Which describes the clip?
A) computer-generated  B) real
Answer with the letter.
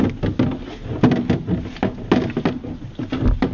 B